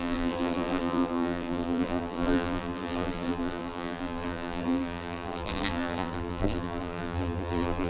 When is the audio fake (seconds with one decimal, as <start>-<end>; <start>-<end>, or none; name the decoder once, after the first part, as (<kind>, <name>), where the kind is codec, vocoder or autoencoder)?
0.0-7.9 (vocoder, BigVGAN v2)